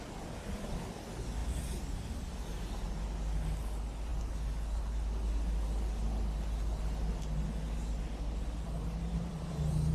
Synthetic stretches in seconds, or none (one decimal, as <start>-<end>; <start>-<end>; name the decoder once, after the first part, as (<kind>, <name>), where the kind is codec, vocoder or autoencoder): none